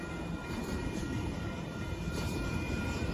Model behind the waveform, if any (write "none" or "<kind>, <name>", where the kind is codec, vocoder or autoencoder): vocoder, BigVGAN v2